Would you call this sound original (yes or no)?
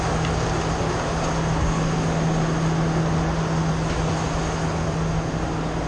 yes